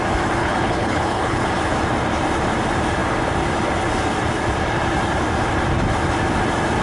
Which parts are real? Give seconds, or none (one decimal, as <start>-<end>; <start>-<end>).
0.0-0.4; 1.5-6.8